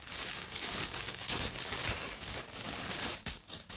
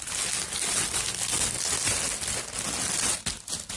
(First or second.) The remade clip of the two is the first